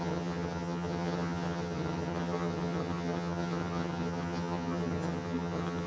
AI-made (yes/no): yes